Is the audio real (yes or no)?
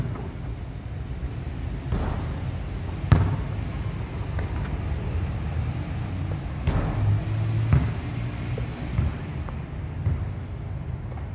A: yes